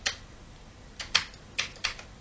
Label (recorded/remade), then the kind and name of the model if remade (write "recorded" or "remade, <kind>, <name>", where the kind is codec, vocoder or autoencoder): recorded